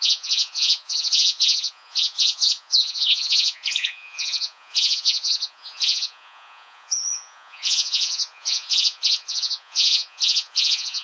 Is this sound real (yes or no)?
no